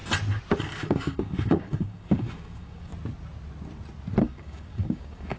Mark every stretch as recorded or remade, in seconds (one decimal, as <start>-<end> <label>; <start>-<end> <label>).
0.0-0.6 recorded; 0.6-2.9 remade; 2.9-4.2 recorded; 4.2-5.4 remade